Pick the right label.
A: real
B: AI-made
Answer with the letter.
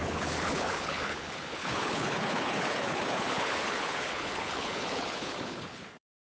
B